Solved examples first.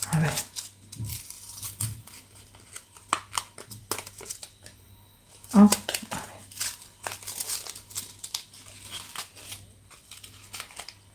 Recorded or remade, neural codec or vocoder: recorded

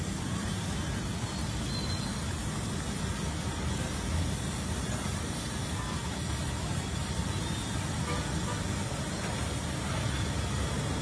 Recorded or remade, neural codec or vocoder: recorded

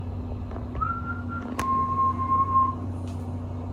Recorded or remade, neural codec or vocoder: recorded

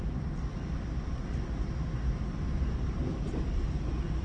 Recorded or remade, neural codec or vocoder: recorded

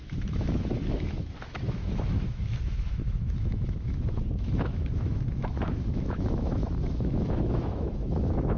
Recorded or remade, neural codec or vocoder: remade, autoencoder, DAC-VAE